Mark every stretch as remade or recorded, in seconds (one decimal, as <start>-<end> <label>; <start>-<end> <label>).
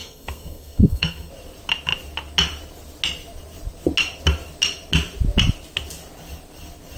0.0-1.3 remade; 1.3-7.0 recorded